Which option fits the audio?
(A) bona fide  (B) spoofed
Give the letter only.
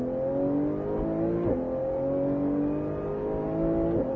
A